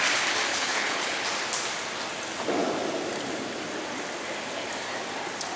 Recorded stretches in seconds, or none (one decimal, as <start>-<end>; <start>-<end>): 0.0-0.5; 1.2-5.6